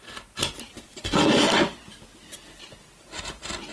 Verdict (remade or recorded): recorded